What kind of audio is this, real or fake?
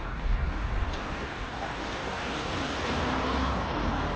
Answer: fake